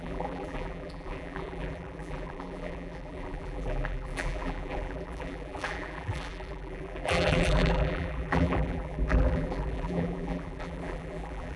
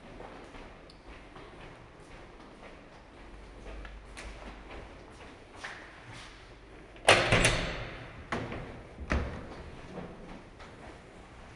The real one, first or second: second